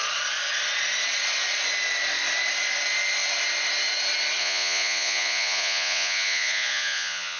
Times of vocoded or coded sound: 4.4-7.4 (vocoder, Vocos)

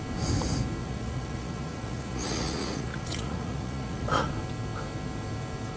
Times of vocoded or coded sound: 0.8-4.3 (vocoder, Vocos)

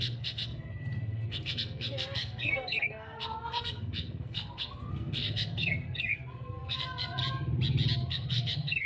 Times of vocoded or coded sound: 0.0-7.2 (codec, SNAC); 8.1-8.9